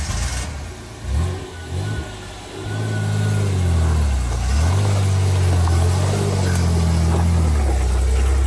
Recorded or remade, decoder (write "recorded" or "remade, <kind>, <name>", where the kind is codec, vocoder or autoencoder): recorded